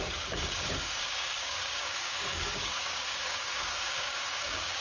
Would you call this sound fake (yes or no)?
yes